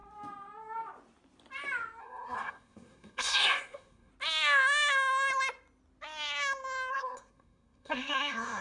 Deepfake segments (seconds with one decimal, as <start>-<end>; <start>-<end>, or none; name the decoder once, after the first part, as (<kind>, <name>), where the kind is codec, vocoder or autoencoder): 2.0-4.1 (codec, SNAC); 6.9-8.6